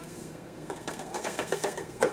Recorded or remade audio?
remade